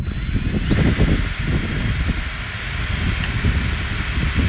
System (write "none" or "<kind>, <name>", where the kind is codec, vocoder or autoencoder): none